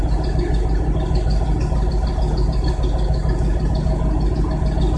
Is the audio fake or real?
real